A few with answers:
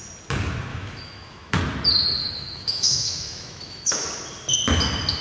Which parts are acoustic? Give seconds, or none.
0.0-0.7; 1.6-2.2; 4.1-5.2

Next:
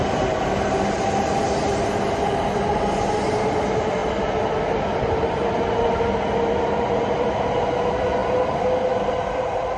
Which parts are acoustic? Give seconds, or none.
0.0-9.8

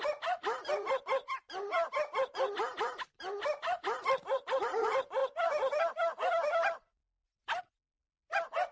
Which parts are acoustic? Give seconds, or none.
5.2-5.8